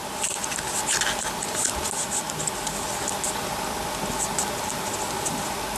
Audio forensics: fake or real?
real